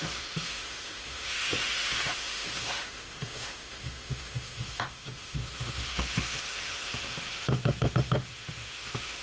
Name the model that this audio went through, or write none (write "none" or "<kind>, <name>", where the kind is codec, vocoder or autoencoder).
autoencoder, DAC-VAE